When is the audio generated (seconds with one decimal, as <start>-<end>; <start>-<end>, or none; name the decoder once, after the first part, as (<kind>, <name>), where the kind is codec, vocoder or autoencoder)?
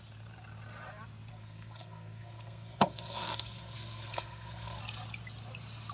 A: 1.3-4.8 (codec, SNAC)